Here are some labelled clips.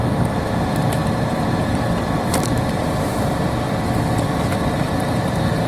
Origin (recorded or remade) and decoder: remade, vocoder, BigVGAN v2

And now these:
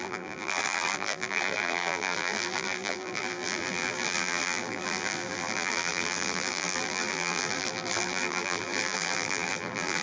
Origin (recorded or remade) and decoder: remade, vocoder, BigVGAN v2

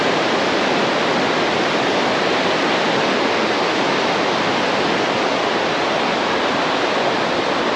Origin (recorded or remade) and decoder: recorded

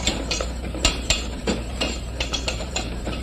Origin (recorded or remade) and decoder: remade, vocoder, BigVGAN v2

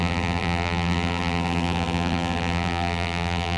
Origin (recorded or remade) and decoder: remade, vocoder, BigVGAN v2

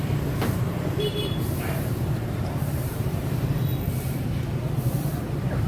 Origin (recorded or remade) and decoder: remade, vocoder, BigVGAN v2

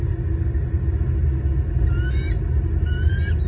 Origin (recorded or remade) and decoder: recorded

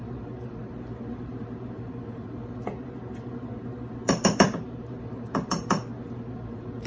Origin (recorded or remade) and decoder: remade, vocoder, BigVGAN v2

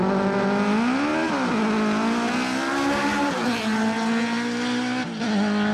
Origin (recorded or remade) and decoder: recorded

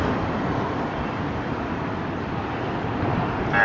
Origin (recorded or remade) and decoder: remade, vocoder, BigVGAN v2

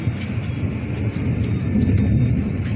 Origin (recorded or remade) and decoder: recorded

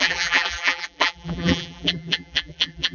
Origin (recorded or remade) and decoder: remade, vocoder, BigVGAN v2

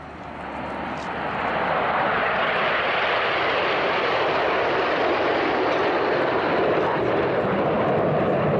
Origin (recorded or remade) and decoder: remade, vocoder, BigVGAN v2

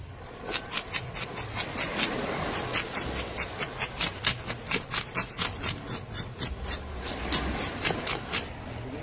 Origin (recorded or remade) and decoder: recorded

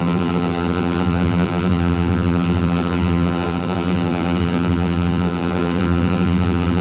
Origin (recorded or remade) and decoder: remade, vocoder, BigVGAN v2